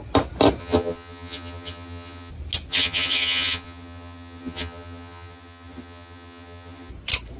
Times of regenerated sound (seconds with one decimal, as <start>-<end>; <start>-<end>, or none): 0.6-2.3; 2.7-6.9